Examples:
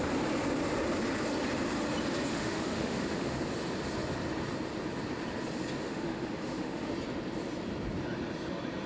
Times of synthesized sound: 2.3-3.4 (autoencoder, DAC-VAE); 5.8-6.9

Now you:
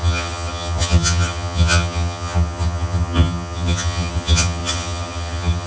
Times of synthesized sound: 0.0-5.7 (vocoder, HiFi-GAN)

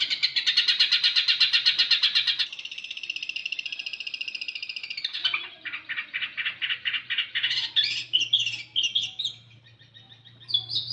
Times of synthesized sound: none

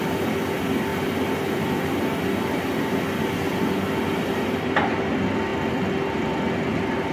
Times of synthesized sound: none

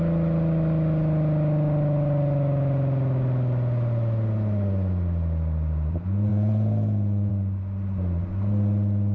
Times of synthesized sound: 6.3-7.3 (vocoder, Vocos)

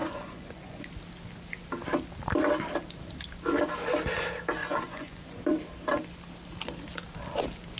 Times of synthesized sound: 0.0-0.8 (vocoder, Vocos); 4.6-5.4

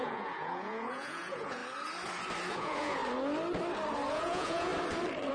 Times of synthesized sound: 0.0-1.6 (vocoder, Vocos); 2.5-3.0; 4.1-4.7